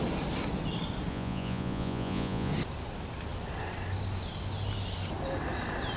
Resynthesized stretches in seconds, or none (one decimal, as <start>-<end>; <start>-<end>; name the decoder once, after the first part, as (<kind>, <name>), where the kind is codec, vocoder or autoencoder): 1.1-2.5 (vocoder, Vocos)

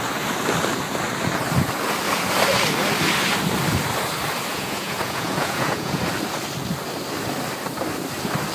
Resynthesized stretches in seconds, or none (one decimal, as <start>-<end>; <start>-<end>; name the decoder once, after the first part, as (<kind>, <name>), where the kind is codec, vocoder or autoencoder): 4.5-6.0 (vocoder, Vocos)